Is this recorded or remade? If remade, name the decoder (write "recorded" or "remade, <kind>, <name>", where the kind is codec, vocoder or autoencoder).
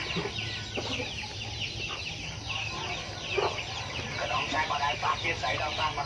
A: recorded